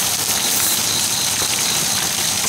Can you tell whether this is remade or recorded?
recorded